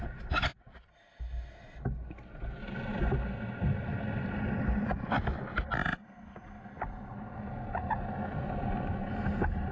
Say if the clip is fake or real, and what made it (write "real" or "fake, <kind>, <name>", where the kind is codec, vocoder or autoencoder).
real